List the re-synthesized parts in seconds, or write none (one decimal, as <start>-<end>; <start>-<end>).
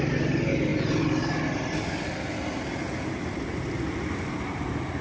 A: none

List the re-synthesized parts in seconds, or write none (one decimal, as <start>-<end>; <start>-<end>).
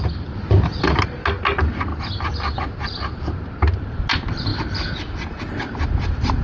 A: none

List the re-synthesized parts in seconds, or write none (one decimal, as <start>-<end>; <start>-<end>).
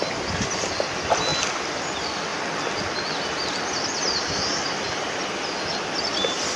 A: none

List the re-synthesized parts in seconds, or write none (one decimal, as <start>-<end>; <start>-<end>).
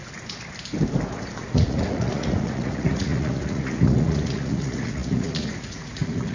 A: 1.1-6.3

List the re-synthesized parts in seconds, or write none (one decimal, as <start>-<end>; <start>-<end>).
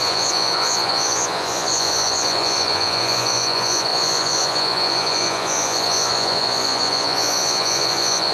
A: 0.0-8.3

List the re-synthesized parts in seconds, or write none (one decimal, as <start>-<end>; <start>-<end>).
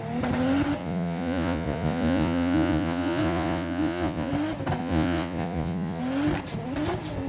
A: 0.8-4.3; 4.8-6.0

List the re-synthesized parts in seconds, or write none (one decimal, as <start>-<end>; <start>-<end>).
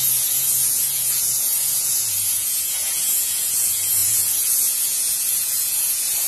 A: 0.0-6.3